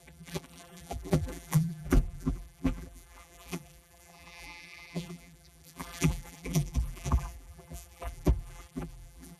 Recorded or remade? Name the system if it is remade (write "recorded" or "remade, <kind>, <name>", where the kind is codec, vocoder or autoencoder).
remade, vocoder, BigVGAN v2